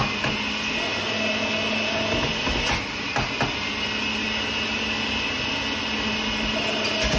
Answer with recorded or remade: recorded